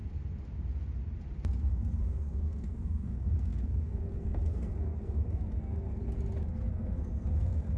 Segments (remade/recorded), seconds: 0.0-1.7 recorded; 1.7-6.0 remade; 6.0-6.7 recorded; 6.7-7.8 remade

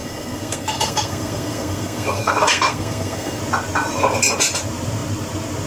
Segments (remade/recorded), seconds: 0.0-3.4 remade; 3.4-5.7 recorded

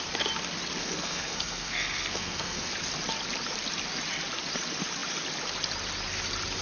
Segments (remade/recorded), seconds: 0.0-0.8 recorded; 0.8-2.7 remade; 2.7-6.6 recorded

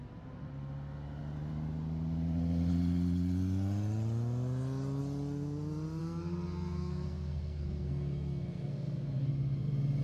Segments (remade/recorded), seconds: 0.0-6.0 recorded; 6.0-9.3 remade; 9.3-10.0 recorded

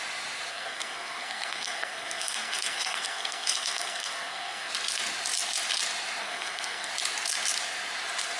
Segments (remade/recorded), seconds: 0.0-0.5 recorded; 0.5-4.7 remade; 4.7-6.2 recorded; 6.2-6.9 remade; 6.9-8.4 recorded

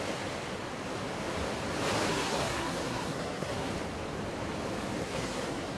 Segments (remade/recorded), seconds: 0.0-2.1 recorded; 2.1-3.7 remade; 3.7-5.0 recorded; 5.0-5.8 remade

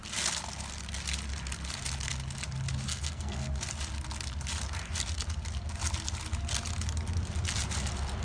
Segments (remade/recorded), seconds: 0.0-2.9 recorded; 2.9-3.5 remade; 3.5-8.2 recorded